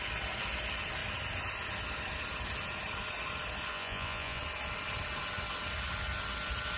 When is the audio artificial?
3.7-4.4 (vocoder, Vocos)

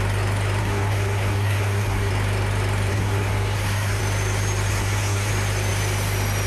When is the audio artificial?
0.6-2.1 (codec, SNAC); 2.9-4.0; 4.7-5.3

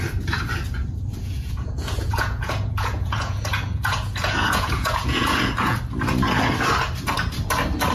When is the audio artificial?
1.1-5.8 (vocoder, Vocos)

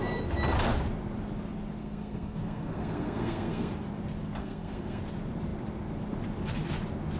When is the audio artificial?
1.8-3.7 (codec, SNAC); 4.4-5.0

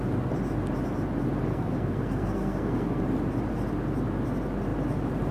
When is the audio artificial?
1.5-3.0 (codec, SNAC)

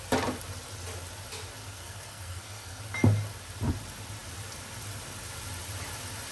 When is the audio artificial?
1.6-2.8 (codec, SNAC)

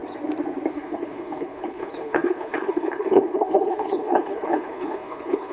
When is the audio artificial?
0.7-5.5 (codec, HILCodec)

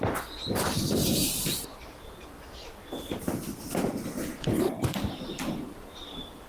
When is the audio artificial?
1.0-1.9 (vocoder, BigVGAN v2)